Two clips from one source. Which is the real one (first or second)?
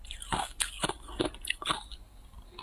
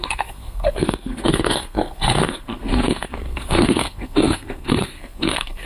first